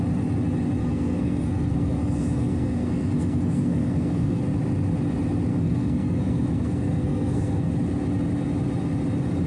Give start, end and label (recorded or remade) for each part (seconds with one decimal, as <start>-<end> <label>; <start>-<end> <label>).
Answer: 0.0-0.8 recorded; 0.8-4.4 remade; 4.4-5.5 recorded; 5.5-7.7 remade; 7.7-9.5 recorded